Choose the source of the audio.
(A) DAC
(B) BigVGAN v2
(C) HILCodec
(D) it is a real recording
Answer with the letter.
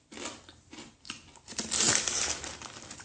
D